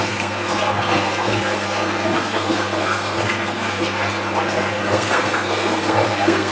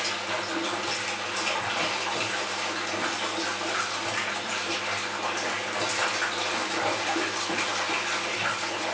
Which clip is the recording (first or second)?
second